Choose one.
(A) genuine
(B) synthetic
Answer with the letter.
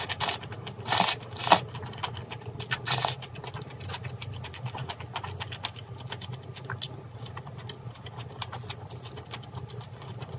A